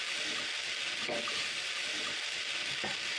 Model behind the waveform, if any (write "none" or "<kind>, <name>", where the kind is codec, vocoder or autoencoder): none